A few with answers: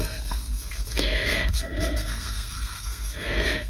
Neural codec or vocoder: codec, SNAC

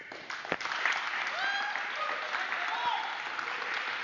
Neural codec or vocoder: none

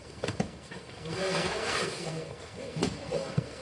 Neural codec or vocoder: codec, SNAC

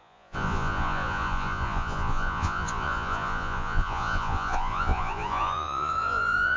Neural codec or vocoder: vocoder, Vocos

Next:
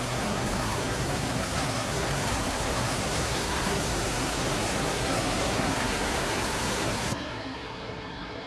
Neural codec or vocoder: codec, SNAC